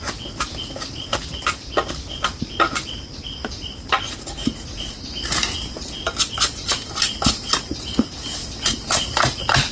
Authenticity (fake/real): real